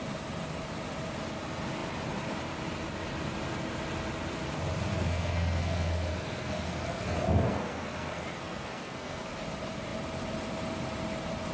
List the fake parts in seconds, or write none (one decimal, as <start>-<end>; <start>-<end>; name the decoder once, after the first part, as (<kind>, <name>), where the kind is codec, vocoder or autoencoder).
4.9-9.3 (codec, SNAC)